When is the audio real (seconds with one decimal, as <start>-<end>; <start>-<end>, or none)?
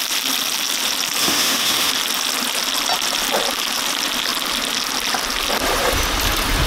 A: 0.0-1.2; 1.9-6.7